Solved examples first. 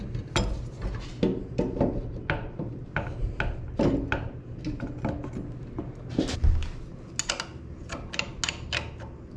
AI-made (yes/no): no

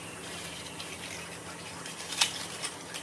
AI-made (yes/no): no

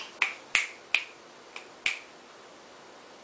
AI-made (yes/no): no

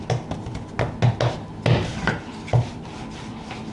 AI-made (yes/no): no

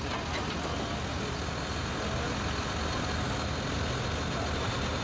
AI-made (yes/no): no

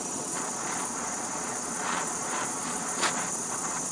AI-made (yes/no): yes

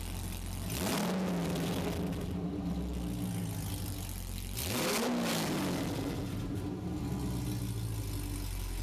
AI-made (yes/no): no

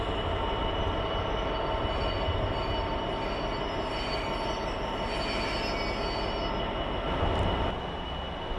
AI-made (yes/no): no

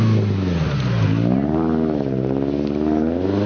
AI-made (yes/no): no